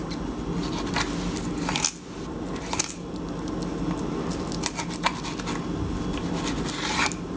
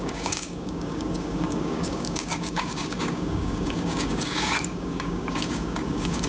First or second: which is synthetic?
second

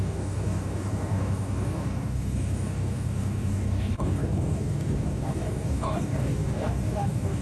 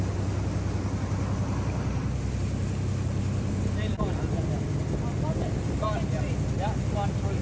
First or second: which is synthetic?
first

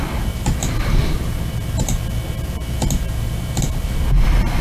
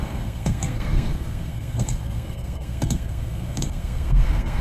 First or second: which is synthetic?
second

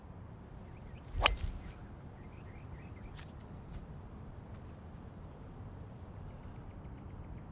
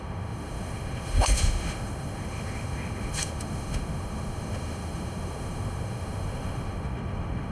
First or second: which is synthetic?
second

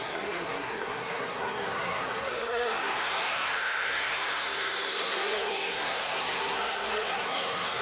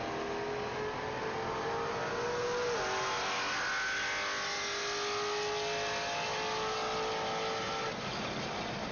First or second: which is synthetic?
first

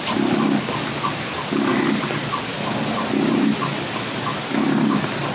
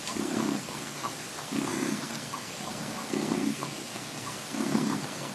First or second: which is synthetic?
second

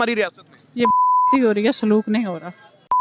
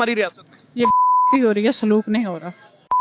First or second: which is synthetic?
second